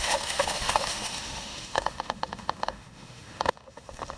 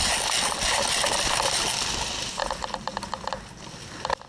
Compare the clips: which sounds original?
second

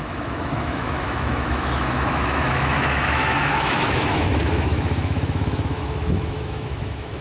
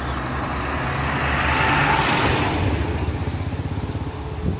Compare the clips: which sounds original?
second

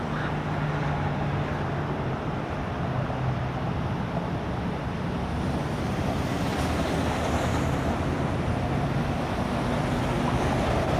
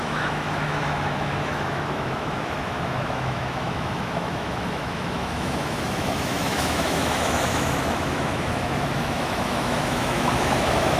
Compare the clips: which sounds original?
first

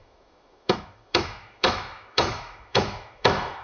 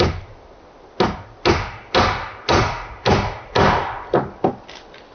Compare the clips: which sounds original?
second